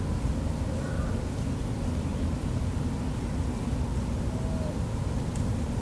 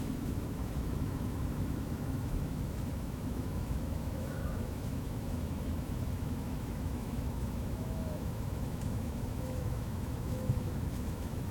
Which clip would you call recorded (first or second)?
first